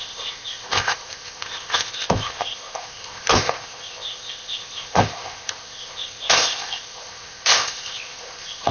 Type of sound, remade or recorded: remade